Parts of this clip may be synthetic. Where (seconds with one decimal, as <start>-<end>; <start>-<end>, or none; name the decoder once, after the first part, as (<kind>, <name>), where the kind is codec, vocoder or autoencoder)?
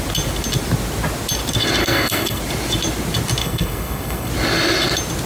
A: 1.8-2.4 (codec, SNAC); 3.4-4.3